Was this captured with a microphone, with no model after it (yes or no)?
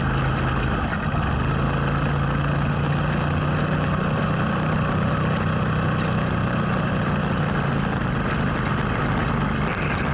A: yes